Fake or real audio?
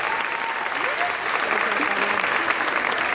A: real